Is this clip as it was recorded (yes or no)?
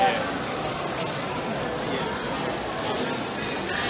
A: yes